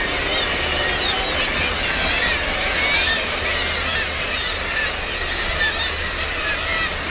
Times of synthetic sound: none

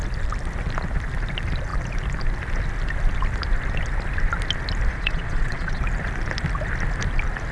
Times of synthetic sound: 4.9-5.8 (vocoder, Vocos)

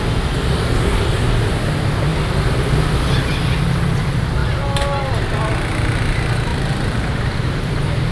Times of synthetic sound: 6.5-8.1 (vocoder, BigVGAN v2)

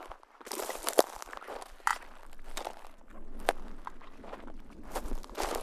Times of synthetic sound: 0.0-1.9 (vocoder, BigVGAN v2); 4.9-5.6